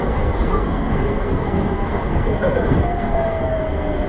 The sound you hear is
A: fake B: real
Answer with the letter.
A